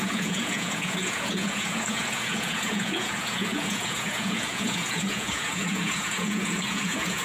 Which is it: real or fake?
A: fake